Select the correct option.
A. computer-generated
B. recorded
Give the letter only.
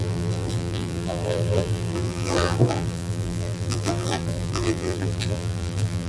A